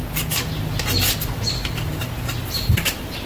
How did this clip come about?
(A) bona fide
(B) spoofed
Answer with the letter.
B